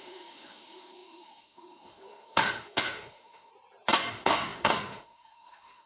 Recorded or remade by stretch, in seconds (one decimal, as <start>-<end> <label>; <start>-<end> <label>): 0.0-3.5 remade; 3.5-4.1 recorded; 4.1-5.9 remade